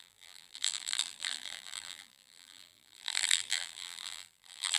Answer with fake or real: fake